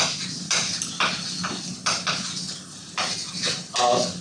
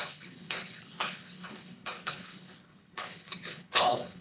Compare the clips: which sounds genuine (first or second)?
first